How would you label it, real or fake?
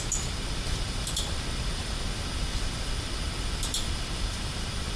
real